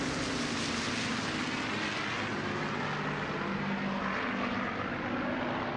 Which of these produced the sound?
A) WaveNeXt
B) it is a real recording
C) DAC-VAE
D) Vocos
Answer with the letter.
B